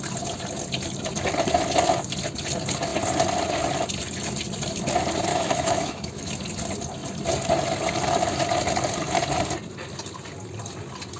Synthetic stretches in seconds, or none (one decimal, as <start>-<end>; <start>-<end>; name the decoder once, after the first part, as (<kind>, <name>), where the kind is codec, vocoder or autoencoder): 5.3-6.3 (autoencoder, DAC-VAE)